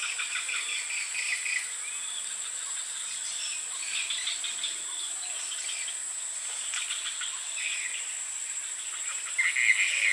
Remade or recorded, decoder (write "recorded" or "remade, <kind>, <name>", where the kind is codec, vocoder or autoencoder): recorded